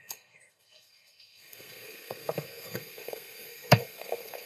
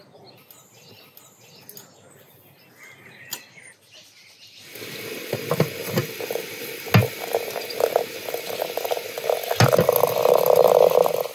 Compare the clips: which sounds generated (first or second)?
first